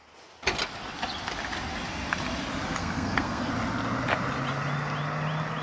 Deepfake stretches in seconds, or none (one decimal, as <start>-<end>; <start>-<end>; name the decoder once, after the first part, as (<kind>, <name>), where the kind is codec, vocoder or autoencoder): 2.8-3.5 (codec, SNAC)